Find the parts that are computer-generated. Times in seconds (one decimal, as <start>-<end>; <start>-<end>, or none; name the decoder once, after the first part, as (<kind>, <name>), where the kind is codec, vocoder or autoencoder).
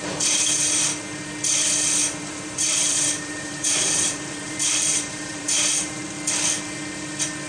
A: 2.0-6.0 (vocoder, BigVGAN v2)